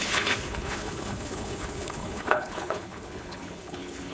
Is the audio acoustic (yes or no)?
no